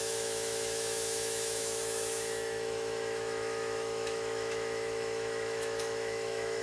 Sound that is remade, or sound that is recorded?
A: remade